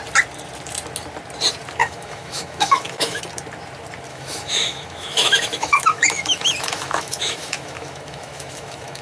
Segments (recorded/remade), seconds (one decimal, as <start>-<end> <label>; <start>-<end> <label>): 0.0-1.8 recorded; 1.8-3.2 remade; 3.2-4.1 recorded; 4.1-9.0 remade